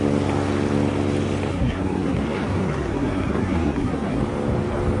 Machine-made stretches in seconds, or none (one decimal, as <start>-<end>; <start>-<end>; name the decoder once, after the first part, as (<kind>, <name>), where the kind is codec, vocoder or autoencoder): 1.5-4.2 (codec, SNAC)